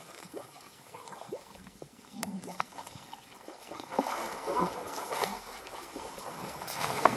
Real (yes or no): no